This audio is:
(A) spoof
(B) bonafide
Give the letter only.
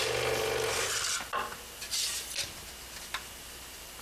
B